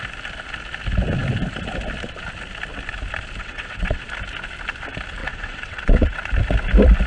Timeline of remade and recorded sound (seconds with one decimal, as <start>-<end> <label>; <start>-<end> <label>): 0.0-3.4 recorded; 3.4-4.0 remade; 4.0-5.2 recorded; 5.2-6.2 remade; 6.2-7.1 recorded